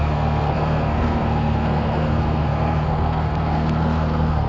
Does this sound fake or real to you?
fake